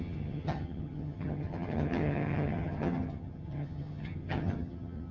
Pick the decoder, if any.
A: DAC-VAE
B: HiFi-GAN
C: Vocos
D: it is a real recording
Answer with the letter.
B